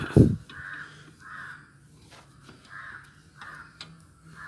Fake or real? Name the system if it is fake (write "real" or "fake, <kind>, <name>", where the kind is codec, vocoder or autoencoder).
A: real